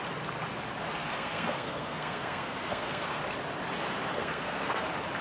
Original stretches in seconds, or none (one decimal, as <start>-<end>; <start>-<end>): 0.0-0.9; 3.2-4.1; 4.8-5.2